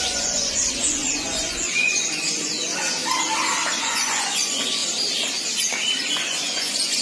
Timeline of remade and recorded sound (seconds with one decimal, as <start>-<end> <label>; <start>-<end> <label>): 0.0-3.0 remade; 3.0-3.8 recorded; 3.8-4.8 remade; 4.8-6.1 recorded; 6.1-7.0 remade